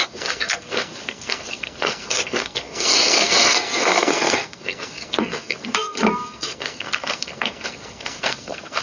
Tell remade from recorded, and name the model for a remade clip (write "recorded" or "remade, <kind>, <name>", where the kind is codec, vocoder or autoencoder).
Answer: remade, codec, SNAC